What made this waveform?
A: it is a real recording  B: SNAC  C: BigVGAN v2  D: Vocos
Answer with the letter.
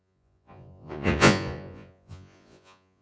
D